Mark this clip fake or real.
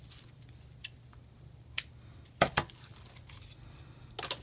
real